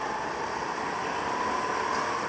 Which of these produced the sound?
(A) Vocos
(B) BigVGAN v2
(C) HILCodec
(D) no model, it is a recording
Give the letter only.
D